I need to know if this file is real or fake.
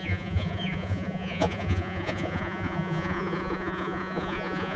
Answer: fake